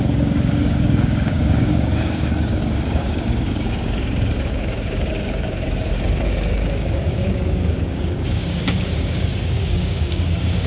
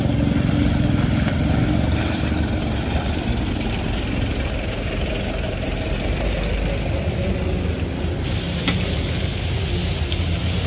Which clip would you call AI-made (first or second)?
first